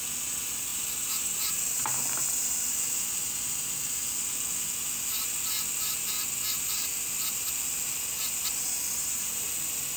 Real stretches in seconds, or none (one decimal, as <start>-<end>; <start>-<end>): 0.0-0.7; 3.0-9.0; 9.5-10.0